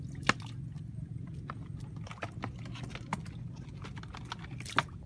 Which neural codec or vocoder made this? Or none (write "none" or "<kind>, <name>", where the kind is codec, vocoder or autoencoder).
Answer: none